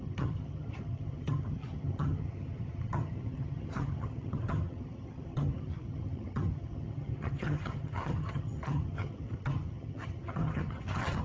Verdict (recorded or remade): remade